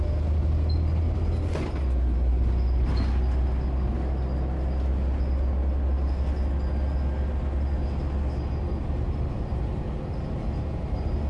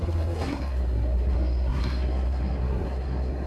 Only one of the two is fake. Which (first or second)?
second